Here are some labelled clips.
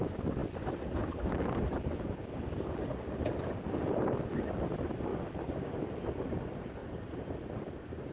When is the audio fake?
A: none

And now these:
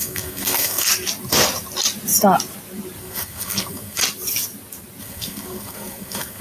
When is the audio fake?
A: 0.0-0.9 (codec, SNAC); 3.0-4.0; 5.0-6.4

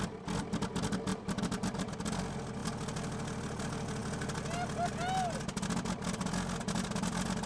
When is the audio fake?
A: 1.1-2.0 (vocoder, BigVGAN v2)

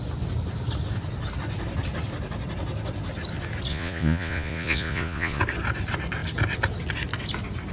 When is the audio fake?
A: 3.7-5.4 (vocoder, Vocos)

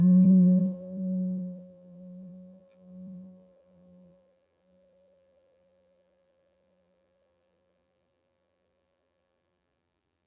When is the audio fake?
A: 0.0-10.3 (vocoder, BigVGAN v2)

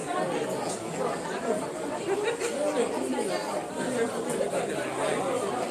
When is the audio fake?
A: none

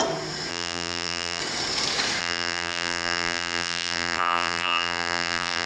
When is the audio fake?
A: 0.5-1.4 (vocoder, BigVGAN v2); 2.2-5.7

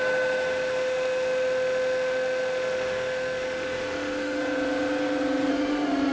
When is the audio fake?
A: 0.0-4.4 (autoencoder, DAC-VAE); 5.5-6.1